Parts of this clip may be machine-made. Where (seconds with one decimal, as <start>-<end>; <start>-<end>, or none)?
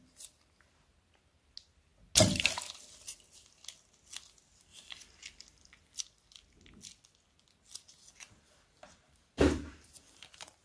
4.7-6.0; 7.7-10.6